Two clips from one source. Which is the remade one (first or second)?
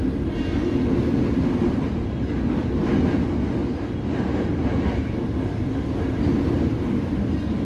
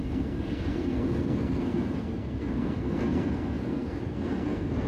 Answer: second